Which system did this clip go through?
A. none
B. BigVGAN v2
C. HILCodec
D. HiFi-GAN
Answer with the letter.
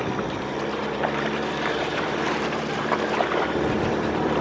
B